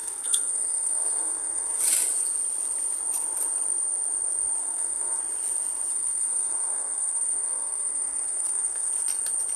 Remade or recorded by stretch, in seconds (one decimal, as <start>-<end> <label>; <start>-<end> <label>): 0.0-1.8 remade; 1.8-4.6 recorded; 4.6-5.2 remade; 5.2-5.9 recorded; 5.9-8.9 remade; 8.9-9.6 recorded